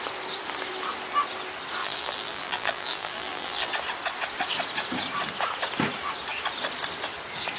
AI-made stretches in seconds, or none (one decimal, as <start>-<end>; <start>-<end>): 1.8-3.7